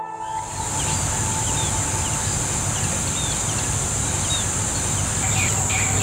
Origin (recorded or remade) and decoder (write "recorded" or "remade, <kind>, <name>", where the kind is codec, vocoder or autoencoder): recorded